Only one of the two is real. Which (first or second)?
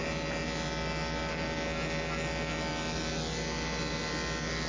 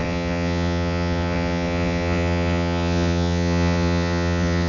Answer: first